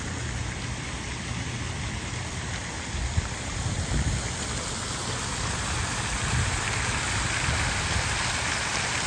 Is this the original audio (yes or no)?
yes